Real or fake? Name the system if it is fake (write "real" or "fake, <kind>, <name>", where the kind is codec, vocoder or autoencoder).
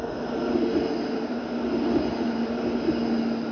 real